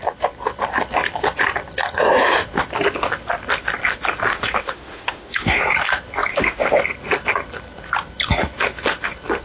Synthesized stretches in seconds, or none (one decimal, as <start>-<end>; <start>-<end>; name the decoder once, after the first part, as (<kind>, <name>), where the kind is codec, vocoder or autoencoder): 4.3-5.6 (autoencoder, DAC-VAE); 6.3-6.8